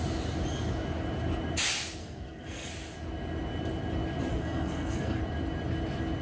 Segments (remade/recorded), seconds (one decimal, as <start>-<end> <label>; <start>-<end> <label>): 0.0-2.0 recorded; 2.0-2.7 remade; 2.7-4.3 recorded; 4.3-5.2 remade; 5.2-6.2 recorded